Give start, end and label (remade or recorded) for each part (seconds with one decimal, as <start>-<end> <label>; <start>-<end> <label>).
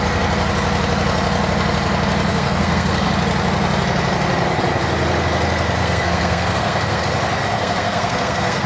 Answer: 0.0-2.3 recorded; 2.3-3.1 remade; 3.1-5.8 recorded; 5.8-7.0 remade; 7.0-7.4 recorded; 7.4-8.7 remade